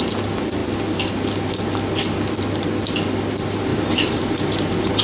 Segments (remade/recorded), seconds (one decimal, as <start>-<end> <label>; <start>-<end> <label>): 0.0-3.7 recorded; 3.7-5.0 remade